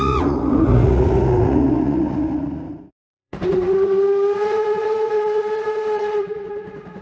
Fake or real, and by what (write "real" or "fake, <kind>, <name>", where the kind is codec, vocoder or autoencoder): fake, vocoder, Vocos